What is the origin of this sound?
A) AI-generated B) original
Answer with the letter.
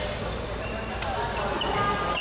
B